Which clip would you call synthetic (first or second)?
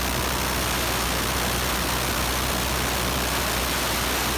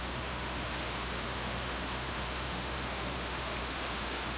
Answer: second